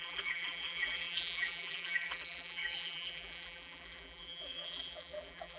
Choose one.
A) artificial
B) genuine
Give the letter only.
A